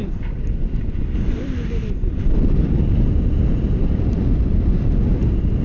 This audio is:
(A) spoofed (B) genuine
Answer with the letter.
A